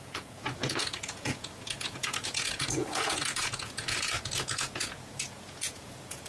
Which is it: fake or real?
fake